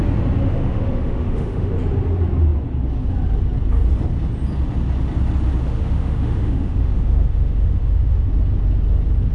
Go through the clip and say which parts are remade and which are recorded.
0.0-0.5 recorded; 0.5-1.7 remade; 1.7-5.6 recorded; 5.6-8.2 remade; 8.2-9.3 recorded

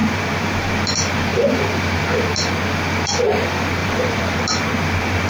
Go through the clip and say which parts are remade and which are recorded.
0.0-0.7 remade; 0.7-1.3 recorded; 1.3-2.0 remade; 2.0-3.8 recorded; 3.8-4.7 remade; 4.7-5.3 recorded

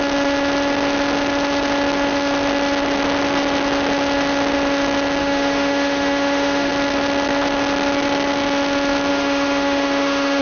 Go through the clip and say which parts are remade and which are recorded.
0.0-5.2 recorded; 5.2-6.7 remade; 6.7-9.1 recorded; 9.1-10.4 remade

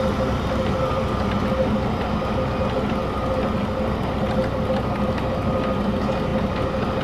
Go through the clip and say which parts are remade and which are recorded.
0.0-7.0 recorded

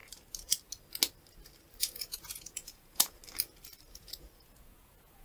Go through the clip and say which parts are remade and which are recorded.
0.0-1.8 recorded; 1.8-3.2 remade; 3.2-3.9 recorded; 3.9-5.2 remade